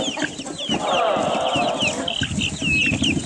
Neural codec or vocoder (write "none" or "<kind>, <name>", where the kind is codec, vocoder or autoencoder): none